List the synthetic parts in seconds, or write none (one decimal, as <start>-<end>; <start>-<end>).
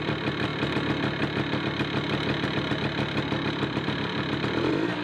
0.0-0.5; 3.5-5.0